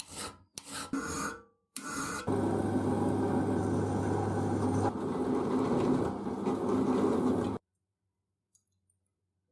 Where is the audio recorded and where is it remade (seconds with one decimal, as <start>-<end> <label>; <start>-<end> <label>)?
0.0-1.6 recorded; 1.6-2.2 remade; 2.2-9.5 recorded